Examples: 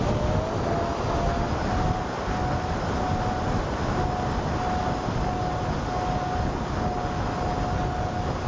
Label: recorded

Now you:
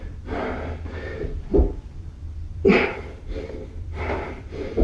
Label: remade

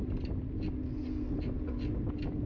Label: recorded